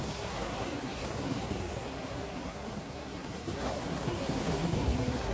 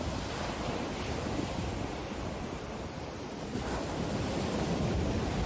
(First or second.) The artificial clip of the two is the first